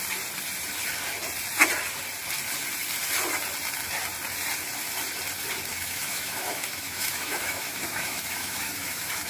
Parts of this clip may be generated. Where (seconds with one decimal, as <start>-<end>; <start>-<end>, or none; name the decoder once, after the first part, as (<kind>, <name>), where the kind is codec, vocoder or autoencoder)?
5.7-9.3 (autoencoder, DAC-VAE)